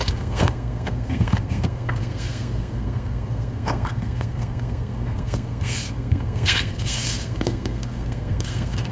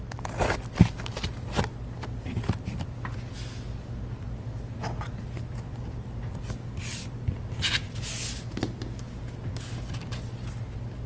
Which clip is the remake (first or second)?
first